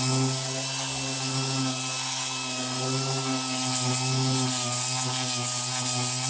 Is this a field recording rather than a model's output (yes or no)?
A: yes